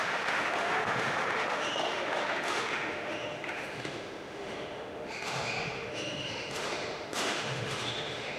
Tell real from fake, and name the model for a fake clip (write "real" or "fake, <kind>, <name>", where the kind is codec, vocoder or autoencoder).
fake, autoencoder, DAC-VAE